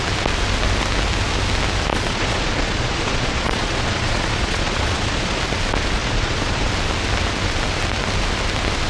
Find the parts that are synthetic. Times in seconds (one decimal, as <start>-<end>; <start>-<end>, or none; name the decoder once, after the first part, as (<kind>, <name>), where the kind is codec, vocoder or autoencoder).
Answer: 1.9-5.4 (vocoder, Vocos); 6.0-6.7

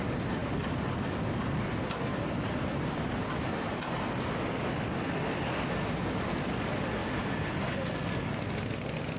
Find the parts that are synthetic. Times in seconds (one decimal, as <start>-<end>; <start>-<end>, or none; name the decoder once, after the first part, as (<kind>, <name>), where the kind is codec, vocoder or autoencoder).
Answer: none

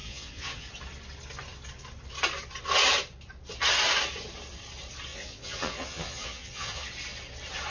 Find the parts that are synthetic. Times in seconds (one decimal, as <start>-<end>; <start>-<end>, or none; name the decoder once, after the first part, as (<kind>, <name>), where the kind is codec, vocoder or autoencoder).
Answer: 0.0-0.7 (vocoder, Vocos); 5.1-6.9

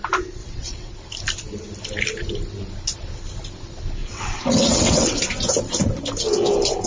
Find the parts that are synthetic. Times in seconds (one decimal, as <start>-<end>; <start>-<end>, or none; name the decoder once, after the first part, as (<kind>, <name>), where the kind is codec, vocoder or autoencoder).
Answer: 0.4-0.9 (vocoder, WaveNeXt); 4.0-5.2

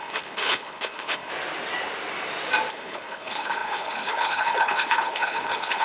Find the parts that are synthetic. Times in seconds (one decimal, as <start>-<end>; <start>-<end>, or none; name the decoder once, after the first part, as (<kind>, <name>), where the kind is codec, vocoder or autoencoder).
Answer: 0.0-1.3 (codec, HILCodec); 2.7-5.8

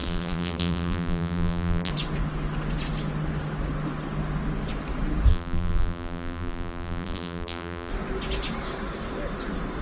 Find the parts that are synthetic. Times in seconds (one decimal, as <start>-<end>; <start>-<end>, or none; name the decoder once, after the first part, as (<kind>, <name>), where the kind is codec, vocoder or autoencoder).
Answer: 0.0-1.9 (vocoder, BigVGAN v2); 5.3-7.9

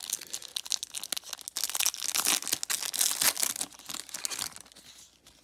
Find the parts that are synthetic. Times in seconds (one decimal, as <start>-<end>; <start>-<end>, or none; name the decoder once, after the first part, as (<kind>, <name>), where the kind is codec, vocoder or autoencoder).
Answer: none

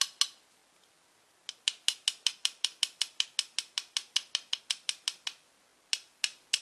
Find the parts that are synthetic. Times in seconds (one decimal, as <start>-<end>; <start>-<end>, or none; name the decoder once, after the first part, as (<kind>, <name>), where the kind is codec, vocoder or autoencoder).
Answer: none